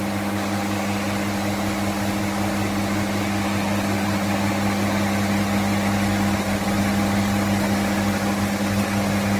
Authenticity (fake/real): real